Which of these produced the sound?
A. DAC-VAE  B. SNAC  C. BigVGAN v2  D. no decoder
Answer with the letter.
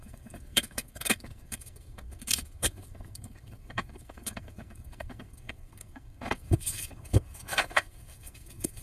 B